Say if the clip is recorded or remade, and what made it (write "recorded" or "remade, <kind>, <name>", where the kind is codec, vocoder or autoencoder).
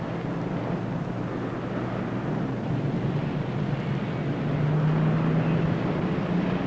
recorded